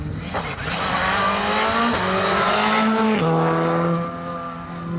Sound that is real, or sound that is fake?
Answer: real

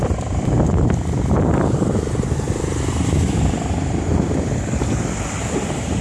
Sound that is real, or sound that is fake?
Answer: fake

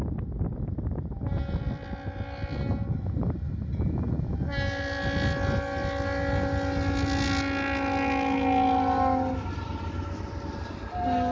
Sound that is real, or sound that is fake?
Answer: real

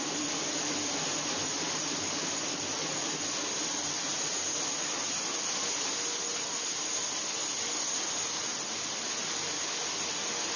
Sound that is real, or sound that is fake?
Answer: real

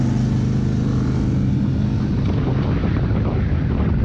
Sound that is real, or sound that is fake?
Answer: real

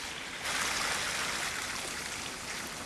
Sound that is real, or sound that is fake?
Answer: real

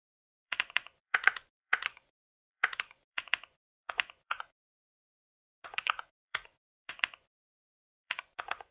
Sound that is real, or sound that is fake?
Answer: fake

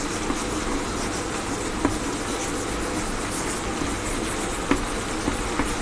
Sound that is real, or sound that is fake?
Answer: real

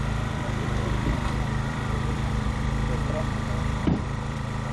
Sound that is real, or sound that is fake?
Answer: fake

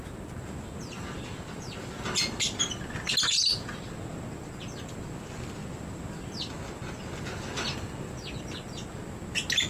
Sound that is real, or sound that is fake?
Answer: real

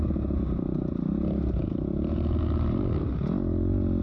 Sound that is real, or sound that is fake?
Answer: real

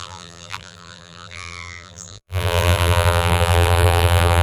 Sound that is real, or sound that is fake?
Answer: fake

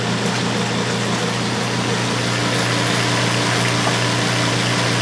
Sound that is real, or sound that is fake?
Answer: real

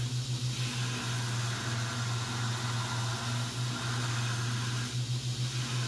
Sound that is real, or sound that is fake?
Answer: real